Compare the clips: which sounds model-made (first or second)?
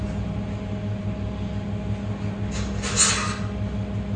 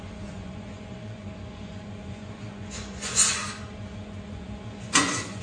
second